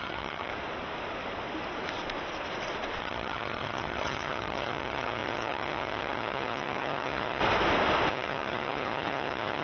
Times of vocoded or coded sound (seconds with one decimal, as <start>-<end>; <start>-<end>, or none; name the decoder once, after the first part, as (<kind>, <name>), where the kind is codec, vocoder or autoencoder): 0.0-0.5 (vocoder, HiFi-GAN); 3.0-7.4; 8.1-9.6